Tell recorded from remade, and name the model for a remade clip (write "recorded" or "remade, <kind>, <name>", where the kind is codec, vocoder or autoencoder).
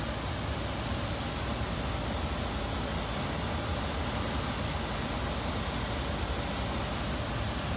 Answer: recorded